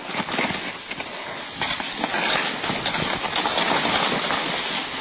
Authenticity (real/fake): real